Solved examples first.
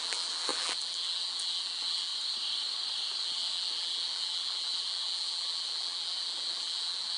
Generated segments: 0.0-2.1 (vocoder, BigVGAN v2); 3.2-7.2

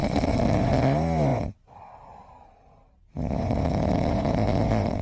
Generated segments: none

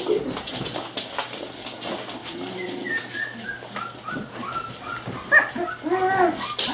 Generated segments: none

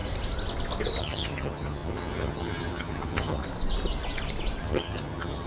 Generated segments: 1.0-3.4 (vocoder, HiFi-GAN); 4.6-5.5

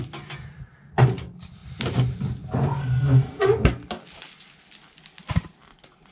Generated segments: none

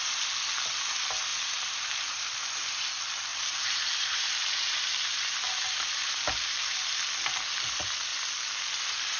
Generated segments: 1.3-2.4 (vocoder, BigVGAN v2); 3.3-6.8